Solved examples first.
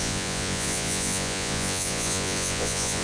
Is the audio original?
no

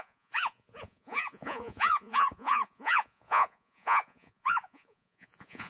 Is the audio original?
no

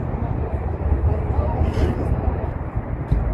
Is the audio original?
yes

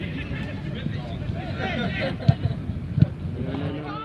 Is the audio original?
yes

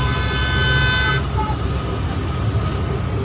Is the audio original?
yes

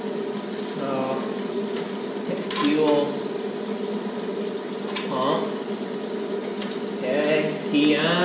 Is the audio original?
yes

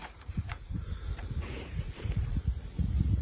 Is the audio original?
no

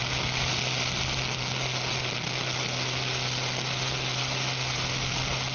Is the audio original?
yes